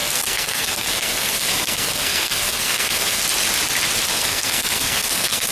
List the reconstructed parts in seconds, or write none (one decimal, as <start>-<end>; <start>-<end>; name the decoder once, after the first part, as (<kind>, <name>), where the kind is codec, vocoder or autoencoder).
0.0-3.2 (codec, SNAC); 4.1-5.5

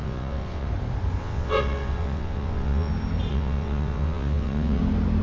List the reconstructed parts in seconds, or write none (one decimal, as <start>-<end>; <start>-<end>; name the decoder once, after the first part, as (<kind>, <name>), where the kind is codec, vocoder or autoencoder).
0.0-0.7 (vocoder, WaveNeXt); 1.2-2.9; 3.3-4.8

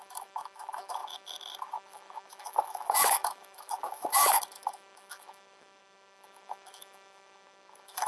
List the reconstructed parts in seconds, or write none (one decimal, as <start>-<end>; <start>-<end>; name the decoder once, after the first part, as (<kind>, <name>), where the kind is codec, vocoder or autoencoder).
0.0-8.1 (autoencoder, DAC-VAE)

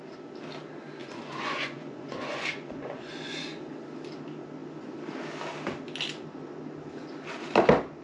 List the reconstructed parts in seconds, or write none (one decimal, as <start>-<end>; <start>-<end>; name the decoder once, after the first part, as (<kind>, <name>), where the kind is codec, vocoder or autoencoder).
1.0-3.7 (vocoder, Vocos)

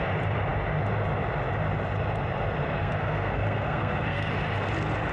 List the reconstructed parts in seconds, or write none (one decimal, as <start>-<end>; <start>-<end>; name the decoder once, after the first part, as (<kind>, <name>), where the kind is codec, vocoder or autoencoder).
2.8-4.3 (codec, SNAC)

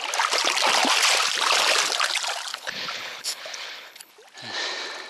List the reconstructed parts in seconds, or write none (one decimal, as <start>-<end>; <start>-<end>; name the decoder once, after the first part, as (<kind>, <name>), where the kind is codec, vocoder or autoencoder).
2.5-4.1 (codec, HILCodec)

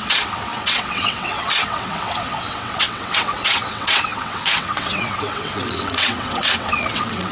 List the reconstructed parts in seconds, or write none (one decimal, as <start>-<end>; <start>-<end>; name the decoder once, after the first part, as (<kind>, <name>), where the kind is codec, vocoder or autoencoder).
0.0-7.3 (vocoder, WaveNeXt)